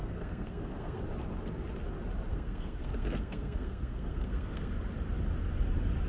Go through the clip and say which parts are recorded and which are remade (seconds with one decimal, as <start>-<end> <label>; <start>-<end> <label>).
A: 0.0-1.0 remade; 1.0-2.3 recorded; 2.3-4.7 remade; 4.7-6.1 recorded